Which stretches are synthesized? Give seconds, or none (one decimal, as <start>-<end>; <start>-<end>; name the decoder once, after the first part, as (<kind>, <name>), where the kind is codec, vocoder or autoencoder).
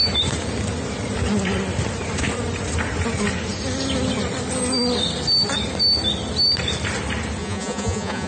7.4-8.3 (vocoder, Vocos)